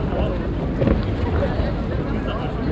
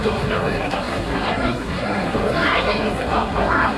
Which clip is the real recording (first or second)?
first